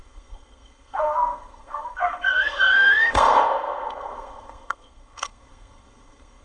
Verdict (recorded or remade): remade